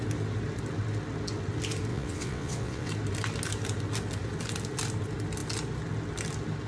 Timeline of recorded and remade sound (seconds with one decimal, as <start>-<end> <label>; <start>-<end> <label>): 0.0-1.9 recorded; 1.9-2.9 remade; 2.9-6.7 recorded